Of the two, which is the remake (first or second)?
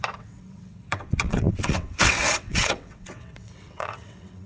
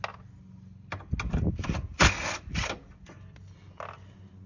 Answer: first